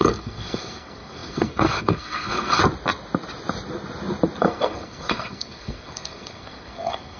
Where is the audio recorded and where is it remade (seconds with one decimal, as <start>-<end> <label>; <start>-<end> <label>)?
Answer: 0.0-2.6 remade; 2.6-4.4 recorded; 4.4-7.2 remade